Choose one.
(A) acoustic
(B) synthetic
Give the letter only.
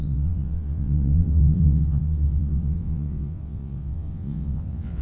B